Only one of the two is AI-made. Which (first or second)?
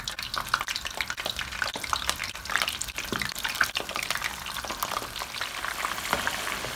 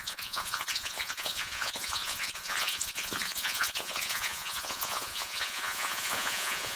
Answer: second